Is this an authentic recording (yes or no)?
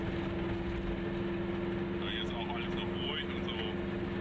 yes